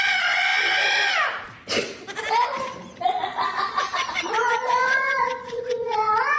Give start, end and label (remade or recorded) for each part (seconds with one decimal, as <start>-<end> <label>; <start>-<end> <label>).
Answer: 0.0-0.5 remade; 0.5-3.0 recorded; 3.0-6.4 remade